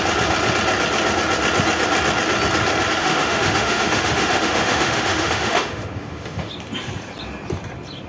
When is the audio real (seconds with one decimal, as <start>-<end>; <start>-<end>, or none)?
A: 0.0-3.0; 6.5-8.1

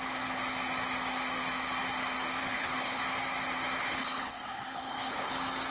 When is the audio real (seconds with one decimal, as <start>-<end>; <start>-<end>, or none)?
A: 0.0-2.4; 3.0-3.8; 5.3-5.7

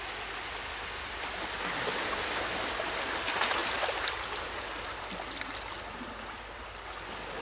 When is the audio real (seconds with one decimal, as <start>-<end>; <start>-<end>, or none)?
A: 0.0-7.4

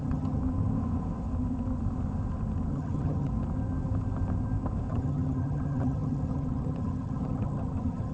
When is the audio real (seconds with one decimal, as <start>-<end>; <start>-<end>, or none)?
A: 0.4-2.7; 3.3-4.9